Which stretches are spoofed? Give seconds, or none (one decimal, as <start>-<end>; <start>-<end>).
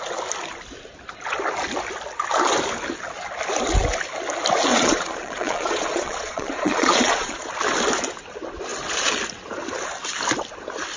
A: 4.7-7.5